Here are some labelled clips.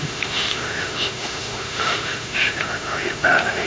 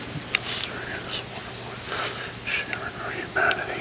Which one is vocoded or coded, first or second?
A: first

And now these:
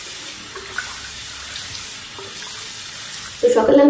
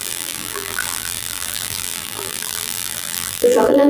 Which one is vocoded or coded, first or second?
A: second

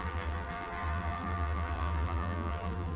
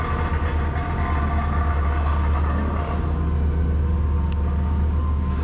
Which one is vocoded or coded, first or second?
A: first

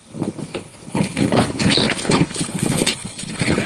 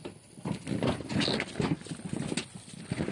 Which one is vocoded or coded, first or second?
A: first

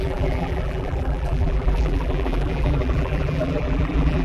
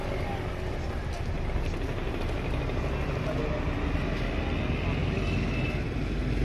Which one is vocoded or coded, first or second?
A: first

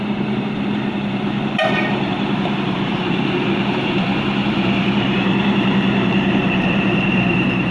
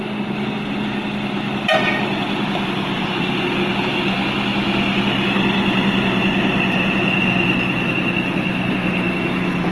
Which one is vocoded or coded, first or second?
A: first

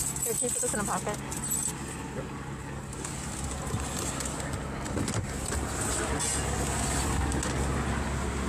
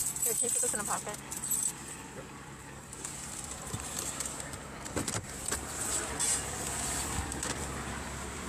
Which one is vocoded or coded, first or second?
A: second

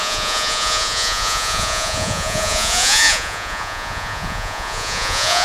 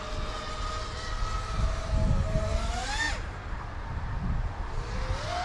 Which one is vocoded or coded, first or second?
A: first